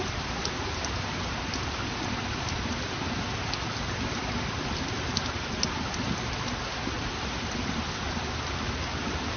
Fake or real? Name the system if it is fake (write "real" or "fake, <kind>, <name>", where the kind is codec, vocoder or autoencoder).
real